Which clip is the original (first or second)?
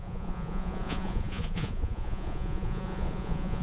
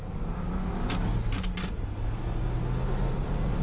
second